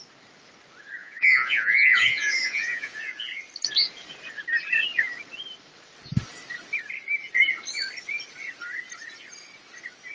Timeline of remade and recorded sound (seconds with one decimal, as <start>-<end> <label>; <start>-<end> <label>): 0.0-1.0 recorded; 1.0-3.4 remade; 3.4-10.1 recorded